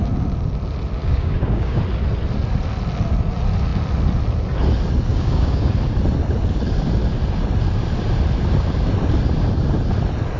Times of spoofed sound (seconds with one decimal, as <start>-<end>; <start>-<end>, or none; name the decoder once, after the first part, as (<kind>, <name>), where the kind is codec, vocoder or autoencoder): 1.0-1.8 (codec, DAC); 5.1-5.7